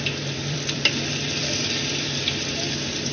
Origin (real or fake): fake